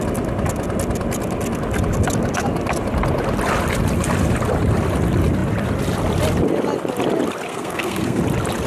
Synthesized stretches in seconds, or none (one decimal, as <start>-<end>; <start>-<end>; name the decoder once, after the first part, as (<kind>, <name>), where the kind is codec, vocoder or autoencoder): 7.5-8.2 (codec, SNAC)